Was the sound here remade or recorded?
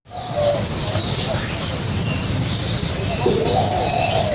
recorded